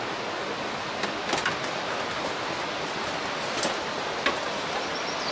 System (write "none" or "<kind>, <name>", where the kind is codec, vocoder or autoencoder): none